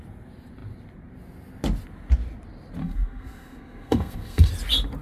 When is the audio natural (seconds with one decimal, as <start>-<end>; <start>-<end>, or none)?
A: 0.0-2.8; 4.5-5.0